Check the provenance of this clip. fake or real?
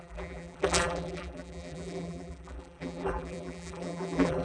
fake